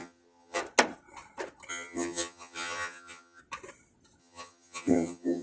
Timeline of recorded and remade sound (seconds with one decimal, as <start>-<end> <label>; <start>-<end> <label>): 0.0-0.6 remade; 0.6-1.7 recorded; 1.7-3.4 remade; 3.4-4.2 recorded; 4.2-5.4 remade